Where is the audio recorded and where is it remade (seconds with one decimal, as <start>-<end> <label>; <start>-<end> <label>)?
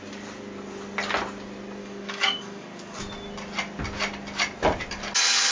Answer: 0.0-1.8 recorded; 1.8-3.0 remade; 3.0-5.5 recorded